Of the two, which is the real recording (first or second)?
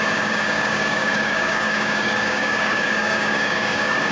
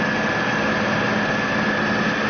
second